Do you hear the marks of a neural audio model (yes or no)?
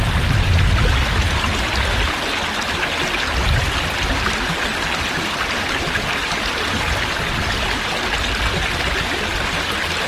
no